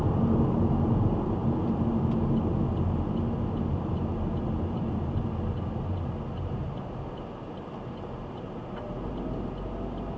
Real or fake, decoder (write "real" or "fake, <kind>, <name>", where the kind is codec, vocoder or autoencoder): real